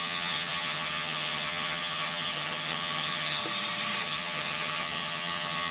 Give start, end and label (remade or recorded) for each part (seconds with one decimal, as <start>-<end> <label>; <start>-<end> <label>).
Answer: 0.0-3.4 remade; 3.4-4.0 recorded; 4.0-5.7 remade